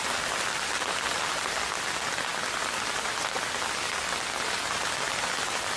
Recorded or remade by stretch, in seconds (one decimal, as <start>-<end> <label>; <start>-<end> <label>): 0.0-5.8 recorded